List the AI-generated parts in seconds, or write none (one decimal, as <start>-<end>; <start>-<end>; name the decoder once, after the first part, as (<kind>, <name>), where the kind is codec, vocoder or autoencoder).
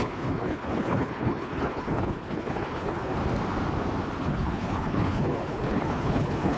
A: 0.0-3.2 (codec, HILCodec); 4.2-6.6